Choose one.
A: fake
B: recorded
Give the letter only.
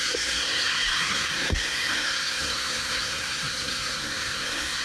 A